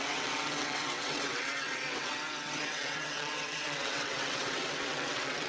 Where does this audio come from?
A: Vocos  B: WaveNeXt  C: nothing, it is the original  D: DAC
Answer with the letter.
B